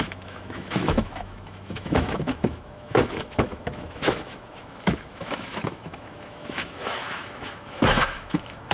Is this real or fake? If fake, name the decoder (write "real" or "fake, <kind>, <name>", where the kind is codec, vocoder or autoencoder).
fake, autoencoder, DAC-VAE